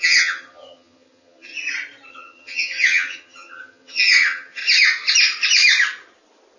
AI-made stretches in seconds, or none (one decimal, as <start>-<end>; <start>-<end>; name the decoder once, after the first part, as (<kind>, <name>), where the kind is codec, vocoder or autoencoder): 0.0-1.5 (vocoder, HiFi-GAN); 2.1-4.6